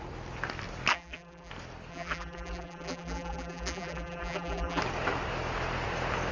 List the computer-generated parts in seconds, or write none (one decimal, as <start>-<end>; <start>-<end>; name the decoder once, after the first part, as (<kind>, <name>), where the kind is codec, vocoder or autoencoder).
0.9-1.5 (vocoder, BigVGAN v2); 1.9-4.8